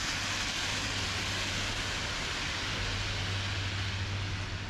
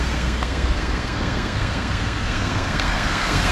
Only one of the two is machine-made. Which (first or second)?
second